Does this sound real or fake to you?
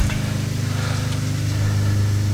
real